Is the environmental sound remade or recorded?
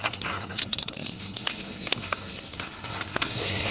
remade